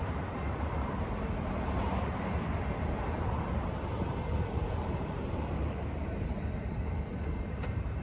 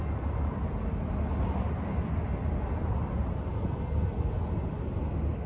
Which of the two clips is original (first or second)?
second